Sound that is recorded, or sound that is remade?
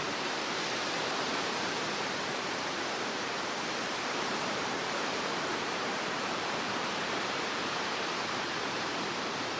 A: remade